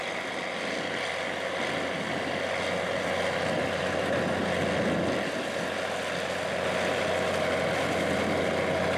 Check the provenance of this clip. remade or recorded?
recorded